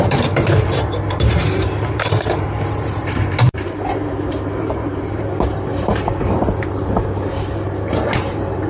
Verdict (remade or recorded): remade